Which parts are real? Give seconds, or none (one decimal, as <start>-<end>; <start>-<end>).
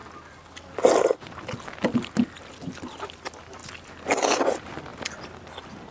0.0-5.9